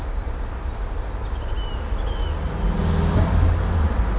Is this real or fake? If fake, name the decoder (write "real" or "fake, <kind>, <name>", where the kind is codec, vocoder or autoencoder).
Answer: real